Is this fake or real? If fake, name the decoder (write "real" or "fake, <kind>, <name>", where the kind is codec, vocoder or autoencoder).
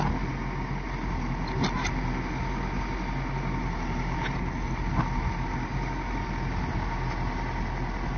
real